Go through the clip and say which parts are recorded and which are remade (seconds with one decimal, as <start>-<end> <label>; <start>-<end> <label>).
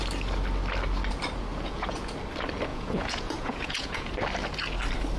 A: 0.0-1.5 recorded; 1.5-2.1 remade; 2.1-2.7 recorded; 2.7-4.1 remade; 4.1-5.2 recorded